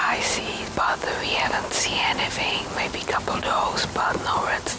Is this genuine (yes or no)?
yes